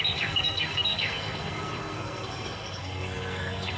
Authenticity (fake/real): fake